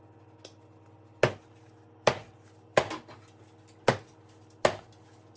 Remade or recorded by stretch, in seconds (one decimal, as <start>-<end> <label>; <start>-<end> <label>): 0.0-5.4 recorded